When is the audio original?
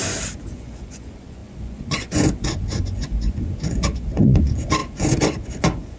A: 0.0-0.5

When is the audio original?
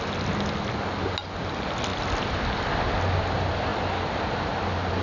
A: 0.0-5.0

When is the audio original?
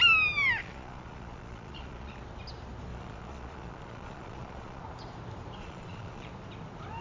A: 0.0-0.6; 2.2-2.9; 4.8-5.6; 6.3-7.0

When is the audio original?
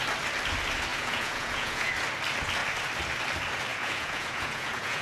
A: 0.0-0.9; 1.9-3.7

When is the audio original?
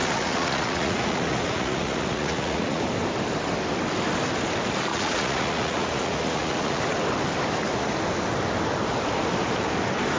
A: 2.8-4.9; 6.8-10.2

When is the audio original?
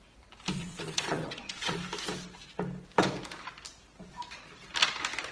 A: 0.0-0.6; 1.8-5.3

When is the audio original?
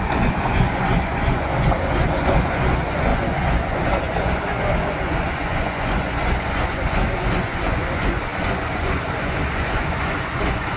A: none